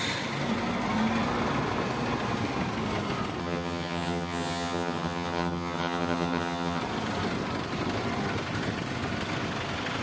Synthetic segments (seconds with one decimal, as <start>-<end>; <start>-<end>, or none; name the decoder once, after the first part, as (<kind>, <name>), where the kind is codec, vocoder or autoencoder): 3.4-6.8 (vocoder, HiFi-GAN)